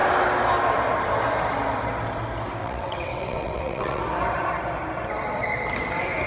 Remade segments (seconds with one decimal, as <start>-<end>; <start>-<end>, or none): 2.6-4.0